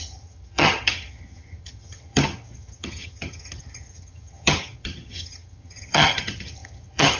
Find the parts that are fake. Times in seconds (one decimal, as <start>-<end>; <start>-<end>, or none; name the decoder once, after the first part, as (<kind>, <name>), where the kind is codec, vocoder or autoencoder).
0.0-7.2 (vocoder, HiFi-GAN)